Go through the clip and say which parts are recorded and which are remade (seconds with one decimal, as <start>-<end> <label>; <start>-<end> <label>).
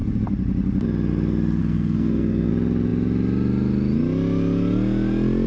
0.0-1.6 recorded; 1.6-2.5 remade; 2.5-5.5 recorded